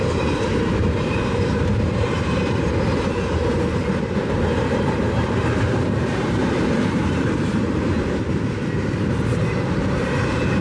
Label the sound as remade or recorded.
remade